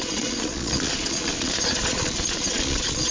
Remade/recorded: remade